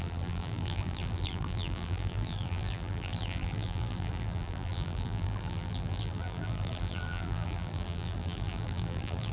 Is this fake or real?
fake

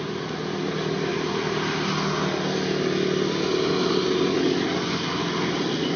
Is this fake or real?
real